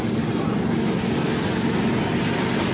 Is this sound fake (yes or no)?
no